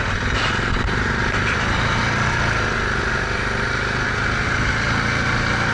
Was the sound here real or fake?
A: real